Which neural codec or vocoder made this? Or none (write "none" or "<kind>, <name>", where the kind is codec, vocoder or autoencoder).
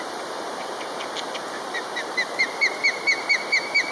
vocoder, BigVGAN v2